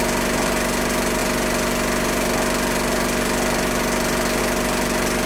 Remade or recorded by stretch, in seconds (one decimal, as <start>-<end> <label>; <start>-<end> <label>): 0.0-5.3 recorded